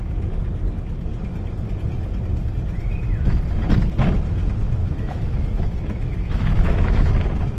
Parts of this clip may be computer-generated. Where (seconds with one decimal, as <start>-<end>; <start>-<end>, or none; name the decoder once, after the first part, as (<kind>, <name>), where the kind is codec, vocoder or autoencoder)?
4.8-7.1 (autoencoder, DAC-VAE)